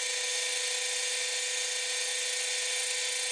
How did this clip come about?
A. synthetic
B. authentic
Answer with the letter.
B